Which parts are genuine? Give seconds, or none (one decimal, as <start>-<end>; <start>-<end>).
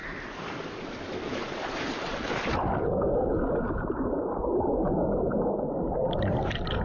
0.0-6.8